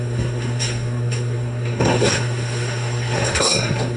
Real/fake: fake